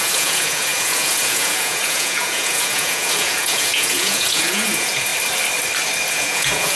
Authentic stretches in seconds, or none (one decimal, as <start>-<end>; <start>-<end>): 5.1-6.1